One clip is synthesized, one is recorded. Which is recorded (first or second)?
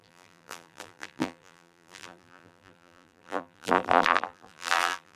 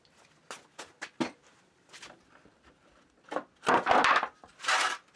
second